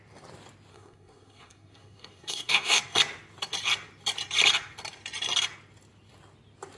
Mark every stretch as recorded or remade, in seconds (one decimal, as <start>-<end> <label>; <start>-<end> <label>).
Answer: 0.0-0.7 recorded; 0.7-2.8 remade; 2.8-6.8 recorded